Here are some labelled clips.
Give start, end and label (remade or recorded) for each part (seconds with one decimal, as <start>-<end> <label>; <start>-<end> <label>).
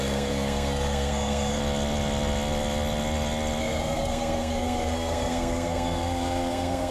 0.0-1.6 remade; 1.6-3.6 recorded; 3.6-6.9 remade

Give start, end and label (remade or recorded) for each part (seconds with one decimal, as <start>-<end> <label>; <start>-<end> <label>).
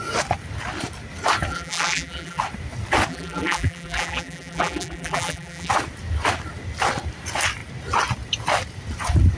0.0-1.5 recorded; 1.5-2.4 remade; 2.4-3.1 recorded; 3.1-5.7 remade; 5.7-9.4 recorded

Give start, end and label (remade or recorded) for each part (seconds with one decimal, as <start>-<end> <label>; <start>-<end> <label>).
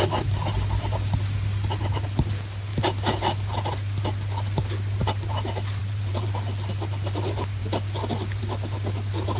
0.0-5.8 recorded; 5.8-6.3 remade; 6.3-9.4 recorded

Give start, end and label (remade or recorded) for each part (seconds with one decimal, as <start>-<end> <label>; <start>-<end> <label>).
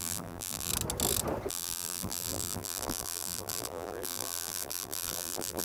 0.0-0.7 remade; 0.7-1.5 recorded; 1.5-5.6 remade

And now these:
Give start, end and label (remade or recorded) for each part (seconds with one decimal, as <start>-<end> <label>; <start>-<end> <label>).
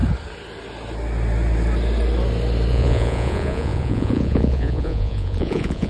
0.0-2.7 recorded; 2.7-5.9 remade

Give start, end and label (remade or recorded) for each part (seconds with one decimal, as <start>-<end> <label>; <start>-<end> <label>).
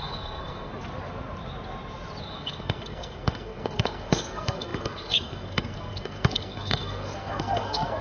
0.0-0.7 remade; 0.7-2.3 recorded; 2.3-8.0 remade